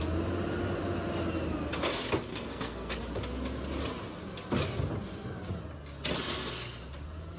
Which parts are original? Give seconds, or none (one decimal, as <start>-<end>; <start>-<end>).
0.0-2.3; 2.9-7.4